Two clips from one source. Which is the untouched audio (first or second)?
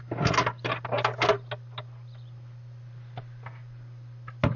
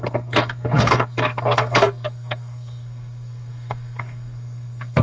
first